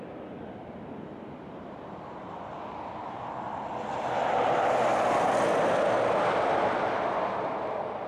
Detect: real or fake real